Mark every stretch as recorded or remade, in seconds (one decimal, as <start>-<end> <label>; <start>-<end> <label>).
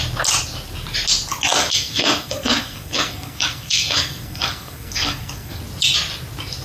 0.0-1.6 recorded; 1.6-5.6 remade; 5.6-6.6 recorded